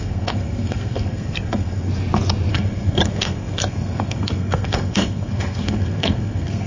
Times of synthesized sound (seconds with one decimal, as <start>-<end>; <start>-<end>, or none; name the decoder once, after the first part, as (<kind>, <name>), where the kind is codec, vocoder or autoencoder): 0.0-1.9 (codec, SNAC); 2.5-6.7